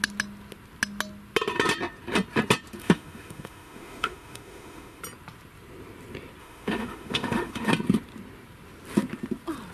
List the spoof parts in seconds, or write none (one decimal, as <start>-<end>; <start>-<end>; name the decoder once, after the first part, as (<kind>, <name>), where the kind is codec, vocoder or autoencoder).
2.8-5.0 (autoencoder, DAC-VAE); 6.4-7.7